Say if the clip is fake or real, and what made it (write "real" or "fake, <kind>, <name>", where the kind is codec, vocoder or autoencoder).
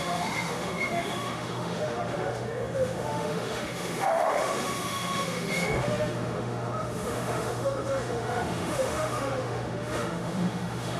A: fake, autoencoder, DAC-VAE